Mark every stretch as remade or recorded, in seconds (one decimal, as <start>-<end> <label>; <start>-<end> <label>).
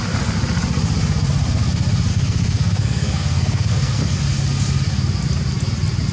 0.0-2.1 recorded; 2.1-4.2 remade; 4.2-6.1 recorded